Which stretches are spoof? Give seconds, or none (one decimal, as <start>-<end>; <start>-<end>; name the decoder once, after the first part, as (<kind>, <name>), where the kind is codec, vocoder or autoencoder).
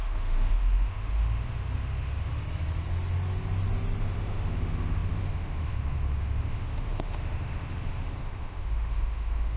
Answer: 0.0-2.3 (autoencoder, DAC-VAE); 4.0-9.6